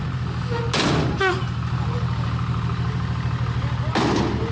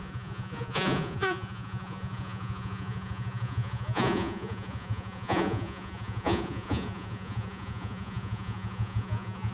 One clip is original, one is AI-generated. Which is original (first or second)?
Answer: first